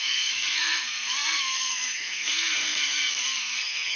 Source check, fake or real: fake